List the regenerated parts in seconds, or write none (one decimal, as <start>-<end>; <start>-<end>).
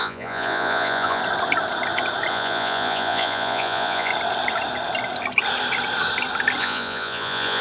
0.0-1.2; 2.3-4.1; 6.6-7.6